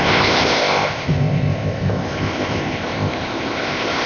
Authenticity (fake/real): fake